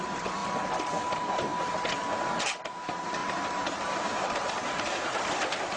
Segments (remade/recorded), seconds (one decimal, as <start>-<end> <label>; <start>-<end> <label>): 0.0-0.4 remade; 0.4-1.1 recorded; 1.1-1.5 remade; 1.5-2.7 recorded; 2.7-5.8 remade